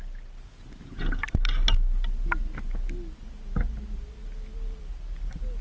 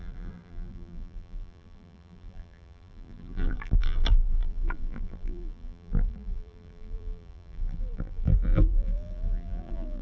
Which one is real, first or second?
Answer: first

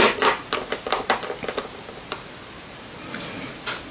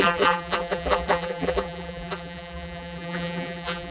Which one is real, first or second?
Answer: first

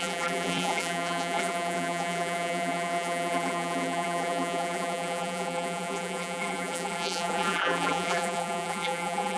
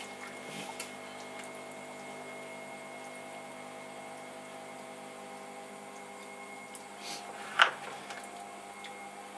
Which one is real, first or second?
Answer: second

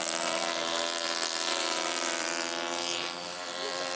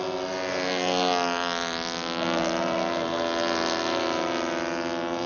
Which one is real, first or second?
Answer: second